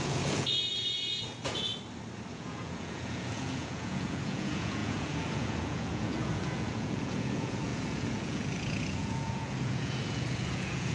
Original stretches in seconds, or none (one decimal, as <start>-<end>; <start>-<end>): 1.7-2.3